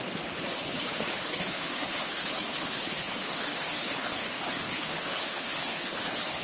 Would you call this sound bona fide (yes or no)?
no